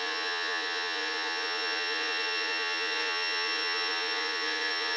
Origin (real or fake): fake